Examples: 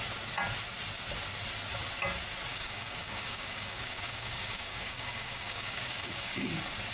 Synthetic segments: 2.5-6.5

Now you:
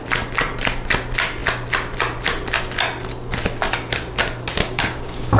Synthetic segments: 4.6-5.4

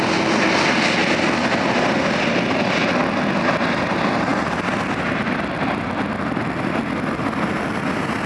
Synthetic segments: none

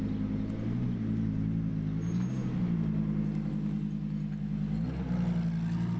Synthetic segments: none

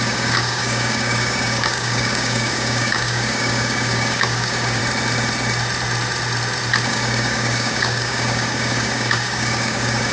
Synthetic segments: 0.0-4.8; 6.9-10.1

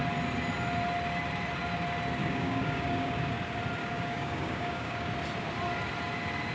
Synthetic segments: 2.2-3.3; 3.8-5.1

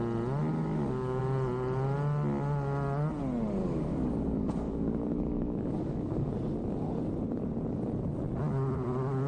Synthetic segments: 0.5-1.2; 3.6-6.3

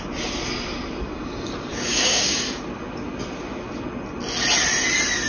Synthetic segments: 1.7-2.4